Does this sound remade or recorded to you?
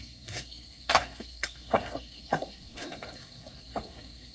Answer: remade